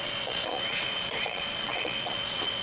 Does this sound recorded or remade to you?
remade